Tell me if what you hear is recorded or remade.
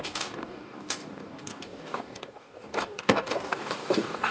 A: remade